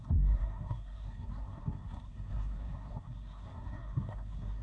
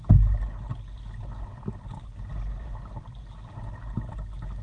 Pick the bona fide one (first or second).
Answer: second